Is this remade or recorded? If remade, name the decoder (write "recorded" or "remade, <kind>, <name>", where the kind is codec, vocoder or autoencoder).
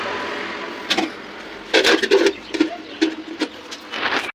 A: recorded